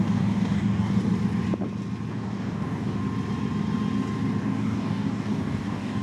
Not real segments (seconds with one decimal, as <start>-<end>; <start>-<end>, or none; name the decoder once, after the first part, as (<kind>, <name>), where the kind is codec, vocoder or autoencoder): 0.0-1.0 (codec, DAC); 2.1-3.0; 4.4-6.0